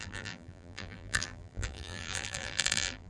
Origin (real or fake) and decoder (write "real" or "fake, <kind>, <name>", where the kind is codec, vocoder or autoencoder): fake, vocoder, BigVGAN v2